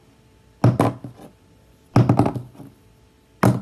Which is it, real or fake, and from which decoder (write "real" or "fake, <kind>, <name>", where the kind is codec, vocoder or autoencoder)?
real